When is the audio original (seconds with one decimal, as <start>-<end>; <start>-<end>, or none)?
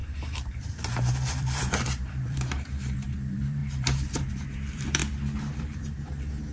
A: 5.0-5.6